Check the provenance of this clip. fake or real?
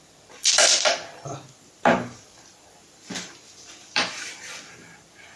fake